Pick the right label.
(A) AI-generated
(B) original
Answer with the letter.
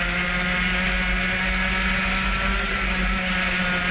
B